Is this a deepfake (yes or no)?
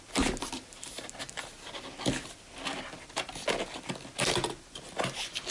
no